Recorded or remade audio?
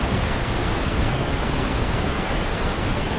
remade